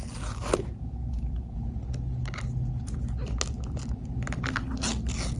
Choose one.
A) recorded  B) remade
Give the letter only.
A